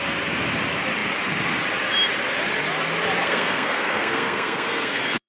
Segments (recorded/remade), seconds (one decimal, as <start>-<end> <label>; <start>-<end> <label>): 0.0-3.2 recorded; 3.2-5.3 remade